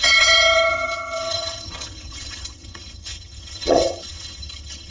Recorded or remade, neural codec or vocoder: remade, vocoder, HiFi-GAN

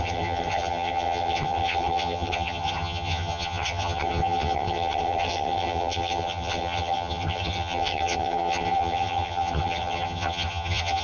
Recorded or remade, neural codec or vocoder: remade, vocoder, HiFi-GAN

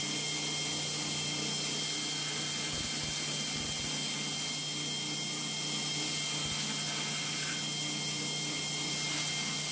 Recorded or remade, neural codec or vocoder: recorded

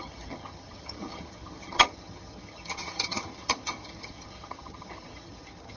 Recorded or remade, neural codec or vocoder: remade, vocoder, HiFi-GAN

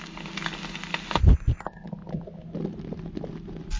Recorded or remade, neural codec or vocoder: recorded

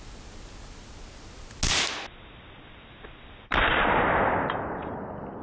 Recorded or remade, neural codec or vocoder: recorded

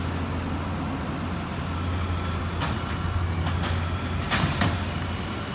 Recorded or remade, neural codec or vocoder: recorded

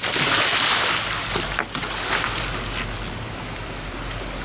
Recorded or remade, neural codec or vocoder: recorded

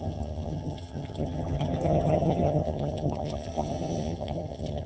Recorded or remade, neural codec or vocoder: remade, vocoder, HiFi-GAN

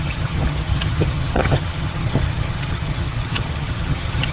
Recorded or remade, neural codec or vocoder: remade, vocoder, HiFi-GAN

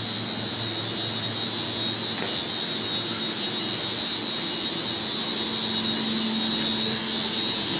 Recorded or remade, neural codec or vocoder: recorded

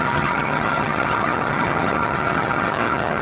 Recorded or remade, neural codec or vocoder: remade, vocoder, HiFi-GAN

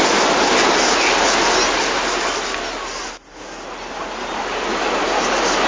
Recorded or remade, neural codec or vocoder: recorded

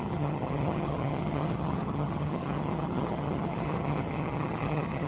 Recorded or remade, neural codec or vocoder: remade, vocoder, HiFi-GAN